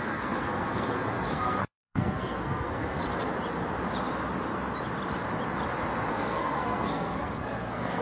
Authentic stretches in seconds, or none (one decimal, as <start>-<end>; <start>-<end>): 3.0-6.1